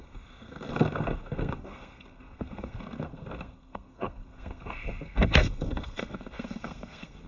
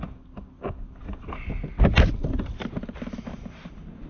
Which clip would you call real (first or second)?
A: second